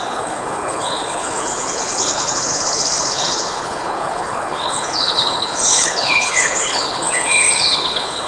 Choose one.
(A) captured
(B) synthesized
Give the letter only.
B